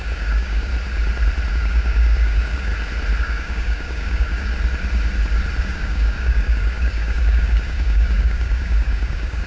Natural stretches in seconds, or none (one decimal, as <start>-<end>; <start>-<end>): 0.7-1.5; 2.7-3.2; 4.5-5.6